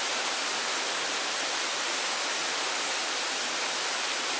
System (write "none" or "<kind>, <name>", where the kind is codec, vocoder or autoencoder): none